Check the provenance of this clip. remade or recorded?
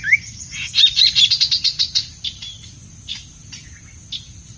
recorded